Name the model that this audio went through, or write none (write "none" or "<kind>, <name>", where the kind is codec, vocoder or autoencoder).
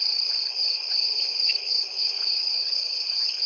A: codec, HILCodec